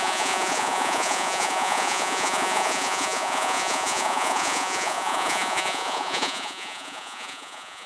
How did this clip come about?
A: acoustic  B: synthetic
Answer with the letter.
B